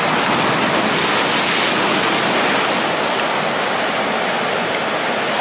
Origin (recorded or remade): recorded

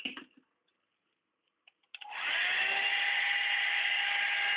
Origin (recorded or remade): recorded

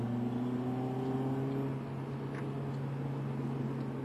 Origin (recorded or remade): recorded